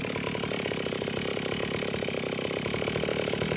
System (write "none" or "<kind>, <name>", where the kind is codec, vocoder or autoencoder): none